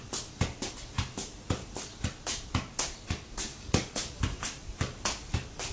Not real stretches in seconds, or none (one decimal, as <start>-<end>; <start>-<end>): 3.5-4.2